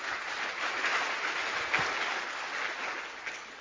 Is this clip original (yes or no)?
yes